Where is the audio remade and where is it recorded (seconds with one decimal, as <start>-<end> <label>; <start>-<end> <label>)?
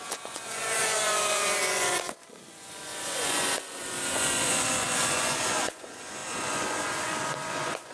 0.0-7.9 remade